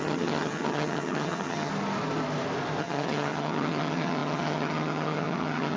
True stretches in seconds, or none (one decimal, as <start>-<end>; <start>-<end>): 1.7-2.8